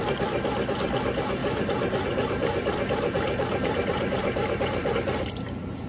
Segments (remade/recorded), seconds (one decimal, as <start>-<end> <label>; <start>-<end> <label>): 0.0-1.4 recorded; 1.4-4.9 remade; 4.9-5.9 recorded